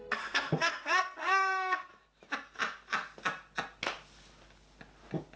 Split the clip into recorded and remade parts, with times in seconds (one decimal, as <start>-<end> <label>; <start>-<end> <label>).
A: 0.0-1.9 remade; 1.9-5.4 recorded